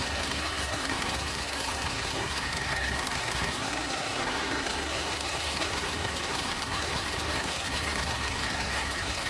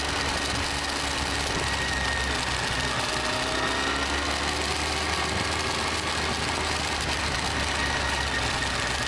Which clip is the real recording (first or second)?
second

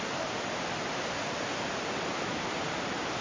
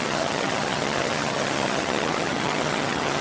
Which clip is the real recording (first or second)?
first